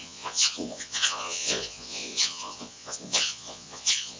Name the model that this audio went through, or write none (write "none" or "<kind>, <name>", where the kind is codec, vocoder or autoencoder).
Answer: vocoder, Vocos